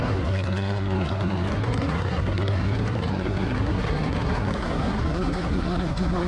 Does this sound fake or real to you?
fake